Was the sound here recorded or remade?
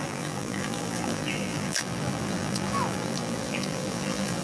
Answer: remade